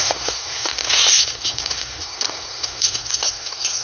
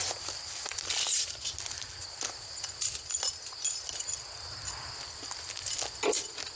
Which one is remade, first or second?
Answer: first